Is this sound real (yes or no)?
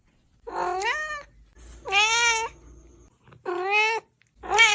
yes